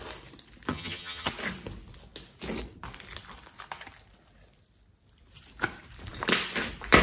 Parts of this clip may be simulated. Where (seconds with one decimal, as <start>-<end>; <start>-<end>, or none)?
0.7-1.3